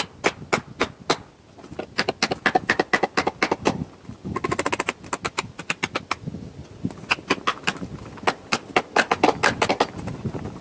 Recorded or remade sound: recorded